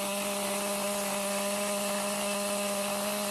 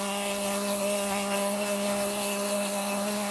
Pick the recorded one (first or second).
first